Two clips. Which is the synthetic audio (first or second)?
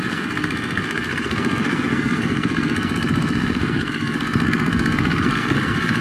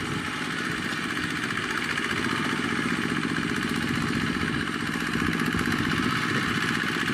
first